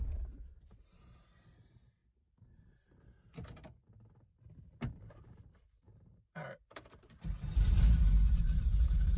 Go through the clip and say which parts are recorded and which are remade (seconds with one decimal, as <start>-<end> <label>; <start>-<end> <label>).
0.0-2.0 remade; 2.0-5.1 recorded; 5.1-9.2 remade